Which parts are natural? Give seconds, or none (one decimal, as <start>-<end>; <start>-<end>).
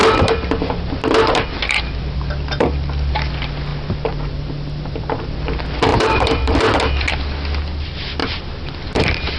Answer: 0.0-5.9; 7.1-8.2